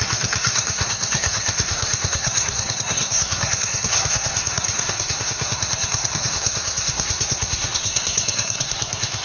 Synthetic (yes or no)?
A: yes